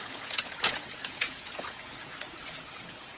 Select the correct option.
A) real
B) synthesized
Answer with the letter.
B